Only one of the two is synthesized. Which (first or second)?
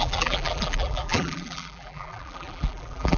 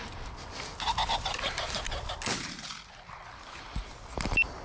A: first